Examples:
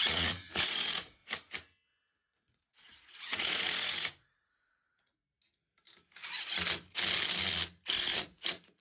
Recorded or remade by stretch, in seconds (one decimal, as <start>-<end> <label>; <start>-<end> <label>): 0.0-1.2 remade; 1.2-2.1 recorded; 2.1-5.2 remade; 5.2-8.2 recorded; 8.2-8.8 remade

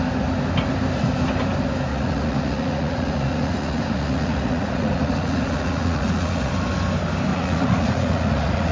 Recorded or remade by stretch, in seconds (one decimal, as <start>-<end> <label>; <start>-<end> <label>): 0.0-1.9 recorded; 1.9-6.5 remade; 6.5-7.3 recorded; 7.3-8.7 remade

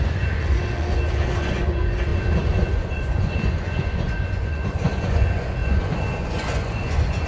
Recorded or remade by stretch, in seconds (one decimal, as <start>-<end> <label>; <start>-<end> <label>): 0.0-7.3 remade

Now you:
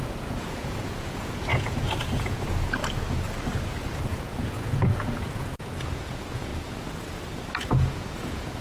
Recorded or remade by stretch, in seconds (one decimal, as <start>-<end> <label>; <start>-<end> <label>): 0.0-2.8 remade; 2.8-4.1 recorded; 4.1-6.5 remade; 6.5-7.6 recorded; 7.6-8.6 remade